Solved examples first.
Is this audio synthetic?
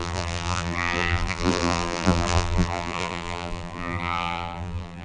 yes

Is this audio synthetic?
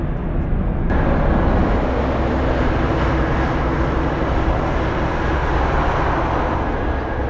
no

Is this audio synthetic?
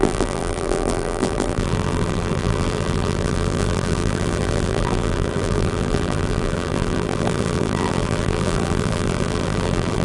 yes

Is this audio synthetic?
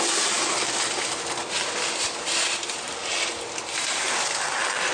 no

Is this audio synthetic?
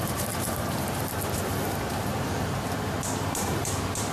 yes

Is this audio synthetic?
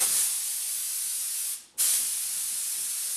no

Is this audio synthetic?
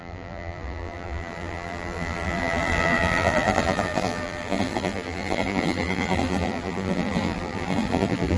yes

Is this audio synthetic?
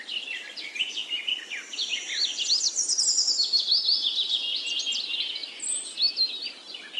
no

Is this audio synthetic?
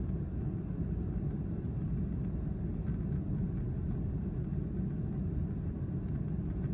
no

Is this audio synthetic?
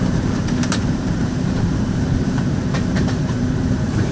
yes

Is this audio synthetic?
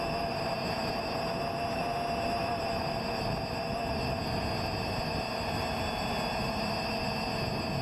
no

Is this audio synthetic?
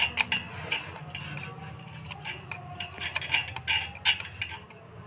no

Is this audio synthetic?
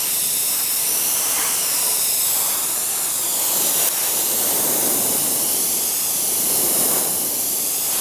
yes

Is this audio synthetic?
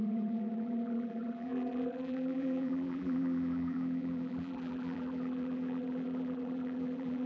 yes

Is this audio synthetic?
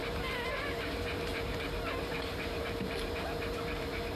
yes